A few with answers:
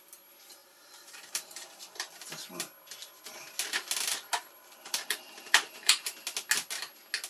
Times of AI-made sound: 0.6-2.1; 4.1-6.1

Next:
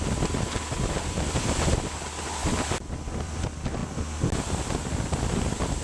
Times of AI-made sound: 2.4-3.4

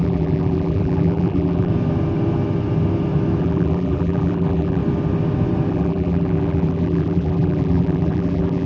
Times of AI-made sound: 0.0-1.7; 3.4-4.8; 5.7-8.7

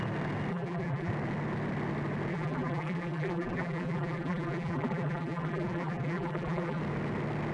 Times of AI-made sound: 0.5-1.1; 2.3-6.8

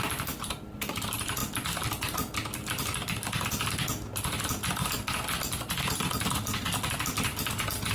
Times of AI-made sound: 0.0-7.9

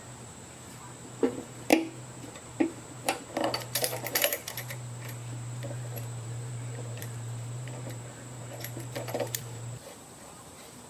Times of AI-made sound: 0.0-1.7; 2.2-10.9

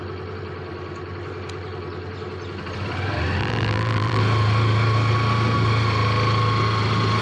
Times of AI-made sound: 3.4-4.2

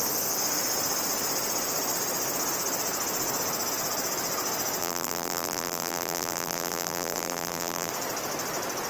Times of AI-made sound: 4.8-7.9